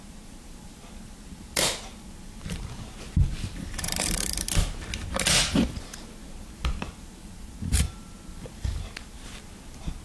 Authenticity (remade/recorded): recorded